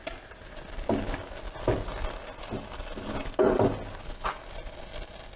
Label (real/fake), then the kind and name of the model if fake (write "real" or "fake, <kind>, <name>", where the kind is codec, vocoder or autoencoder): real